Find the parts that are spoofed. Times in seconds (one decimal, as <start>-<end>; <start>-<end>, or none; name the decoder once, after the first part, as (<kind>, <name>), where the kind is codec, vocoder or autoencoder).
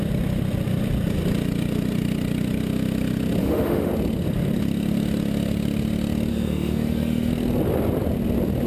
3.4-3.9 (autoencoder, DAC-VAE); 6.3-7.3